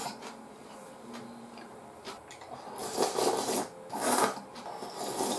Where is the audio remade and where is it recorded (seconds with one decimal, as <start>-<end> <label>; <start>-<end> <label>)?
0.0-2.2 remade; 2.2-2.8 recorded; 2.8-3.5 remade; 3.5-5.4 recorded